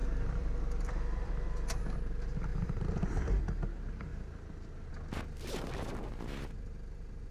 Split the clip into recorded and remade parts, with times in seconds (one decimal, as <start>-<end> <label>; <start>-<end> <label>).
0.0-1.8 remade; 1.8-2.5 recorded; 2.5-3.4 remade; 3.4-4.1 recorded; 4.1-4.9 remade; 4.9-7.3 recorded